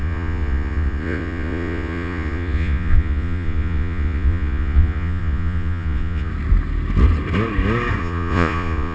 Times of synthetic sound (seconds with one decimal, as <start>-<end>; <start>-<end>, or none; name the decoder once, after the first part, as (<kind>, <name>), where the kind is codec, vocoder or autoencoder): 0.0-6.3 (vocoder, Vocos); 8.0-8.9